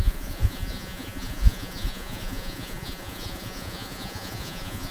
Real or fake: fake